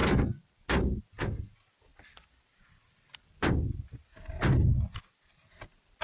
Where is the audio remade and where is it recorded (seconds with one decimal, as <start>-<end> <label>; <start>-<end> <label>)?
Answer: 0.0-1.4 recorded; 1.4-6.0 remade